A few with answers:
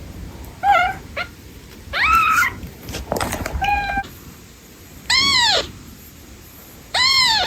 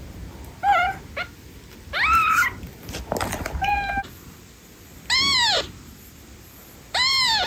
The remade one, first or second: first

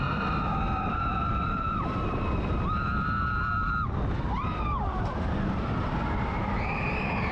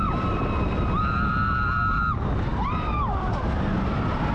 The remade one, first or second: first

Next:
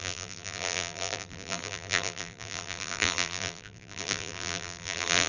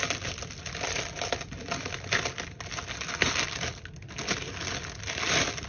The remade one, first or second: first